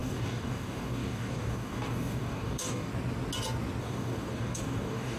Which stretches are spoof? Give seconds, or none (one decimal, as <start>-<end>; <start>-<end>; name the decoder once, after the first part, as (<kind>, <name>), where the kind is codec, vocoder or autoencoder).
0.0-2.9 (codec, DAC); 3.8-5.2